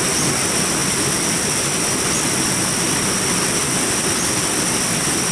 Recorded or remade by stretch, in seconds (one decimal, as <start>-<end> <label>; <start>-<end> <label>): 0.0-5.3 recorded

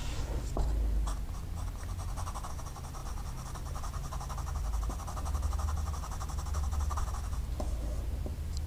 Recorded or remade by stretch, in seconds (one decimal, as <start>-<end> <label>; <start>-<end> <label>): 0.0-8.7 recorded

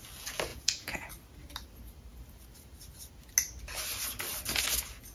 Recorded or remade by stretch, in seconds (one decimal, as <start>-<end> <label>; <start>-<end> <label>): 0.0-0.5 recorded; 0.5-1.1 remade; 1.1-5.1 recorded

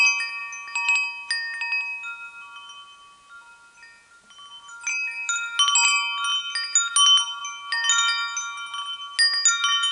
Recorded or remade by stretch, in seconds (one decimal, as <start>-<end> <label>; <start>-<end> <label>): 0.0-9.9 recorded

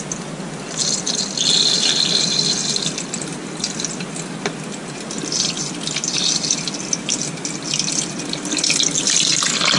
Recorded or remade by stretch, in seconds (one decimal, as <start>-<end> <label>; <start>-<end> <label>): 0.0-9.8 recorded

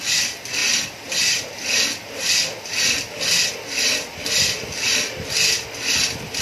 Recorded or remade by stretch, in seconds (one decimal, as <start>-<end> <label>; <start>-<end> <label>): 0.0-6.4 recorded

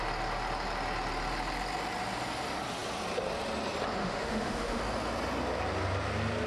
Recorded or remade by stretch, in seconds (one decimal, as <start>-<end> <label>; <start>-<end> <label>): 0.0-4.0 recorded; 4.0-4.8 remade; 4.8-6.5 recorded

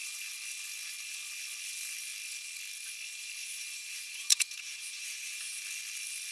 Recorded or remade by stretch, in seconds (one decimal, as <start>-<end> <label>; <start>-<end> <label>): 0.0-3.4 recorded; 3.4-5.6 remade; 5.6-6.3 recorded